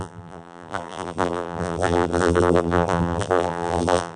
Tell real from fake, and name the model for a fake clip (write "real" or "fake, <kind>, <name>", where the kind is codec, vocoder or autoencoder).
fake, vocoder, BigVGAN v2